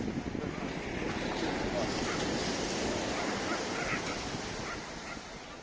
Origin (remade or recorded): recorded